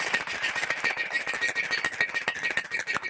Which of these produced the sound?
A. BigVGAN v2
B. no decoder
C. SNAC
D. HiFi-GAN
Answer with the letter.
B